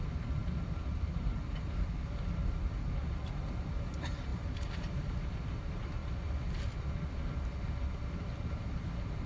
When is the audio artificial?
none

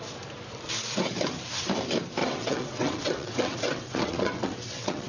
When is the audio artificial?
2.2-5.1 (vocoder, WaveNeXt)

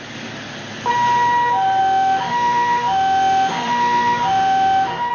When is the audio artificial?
1.8-5.1 (autoencoder, DAC-VAE)

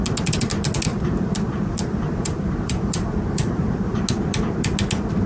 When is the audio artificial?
0.9-4.0 (vocoder, BigVGAN v2)

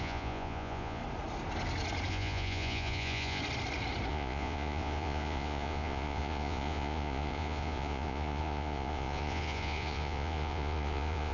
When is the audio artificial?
0.0-1.0 (vocoder, Vocos); 2.1-3.4; 4.1-11.3